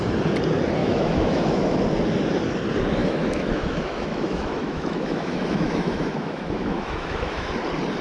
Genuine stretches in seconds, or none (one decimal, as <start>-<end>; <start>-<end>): 0.0-0.8; 1.8-3.0; 7.5-8.0